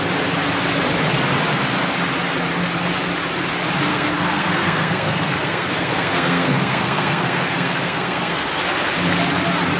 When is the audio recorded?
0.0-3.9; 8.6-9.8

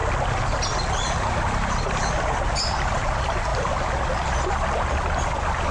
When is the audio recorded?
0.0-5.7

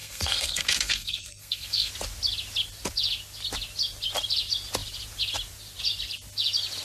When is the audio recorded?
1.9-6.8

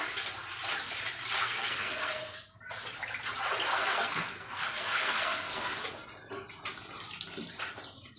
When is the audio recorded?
0.0-1.4; 2.6-3.7; 5.8-8.2

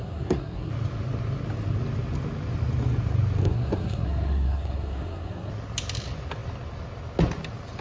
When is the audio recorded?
0.7-3.4; 5.5-7.8

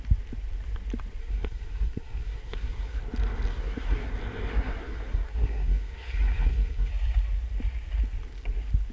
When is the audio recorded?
0.0-1.2; 3.0-3.5; 4.1-4.5; 6.9-8.9

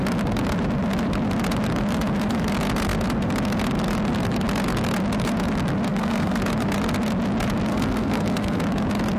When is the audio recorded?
0.0-5.9; 6.4-7.7; 8.6-9.2